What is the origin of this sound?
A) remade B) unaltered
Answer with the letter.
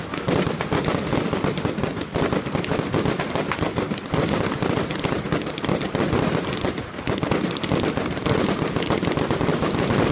B